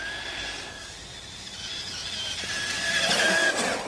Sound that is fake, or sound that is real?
real